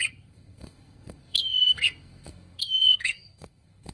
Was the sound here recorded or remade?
remade